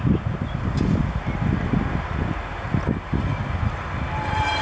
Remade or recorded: recorded